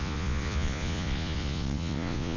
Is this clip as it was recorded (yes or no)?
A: no